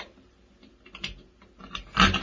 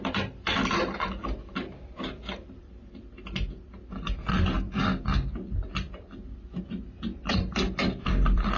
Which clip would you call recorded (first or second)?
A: first